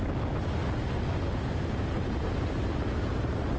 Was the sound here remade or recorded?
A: recorded